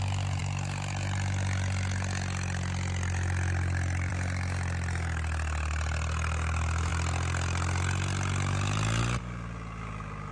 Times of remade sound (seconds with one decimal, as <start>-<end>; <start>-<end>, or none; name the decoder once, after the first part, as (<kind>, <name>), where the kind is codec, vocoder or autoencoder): none